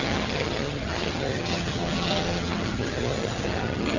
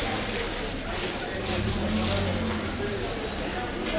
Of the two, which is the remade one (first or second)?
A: first